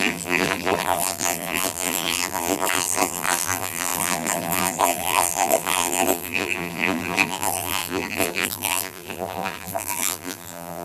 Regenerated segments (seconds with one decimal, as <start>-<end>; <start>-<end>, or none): 0.0-10.8